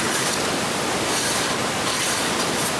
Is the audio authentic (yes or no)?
yes